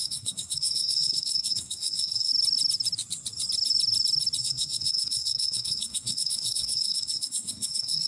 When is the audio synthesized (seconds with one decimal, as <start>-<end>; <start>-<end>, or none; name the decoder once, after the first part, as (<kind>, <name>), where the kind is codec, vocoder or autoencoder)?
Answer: 0.0-2.3 (codec, SNAC); 4.4-8.1